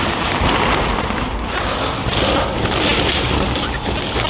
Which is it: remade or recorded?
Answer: recorded